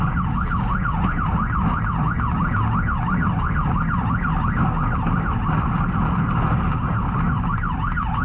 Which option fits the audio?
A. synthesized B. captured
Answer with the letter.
B